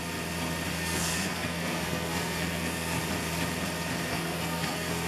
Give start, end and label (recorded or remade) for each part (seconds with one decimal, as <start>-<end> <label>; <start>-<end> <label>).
0.0-0.7 recorded; 0.7-3.0 remade; 3.0-4.1 recorded; 4.1-5.1 remade